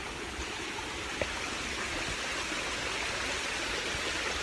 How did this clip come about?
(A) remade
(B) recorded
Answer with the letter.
B